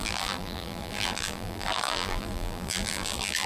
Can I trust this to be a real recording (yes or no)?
no